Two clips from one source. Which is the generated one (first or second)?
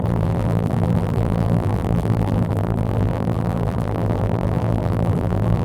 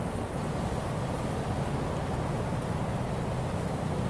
first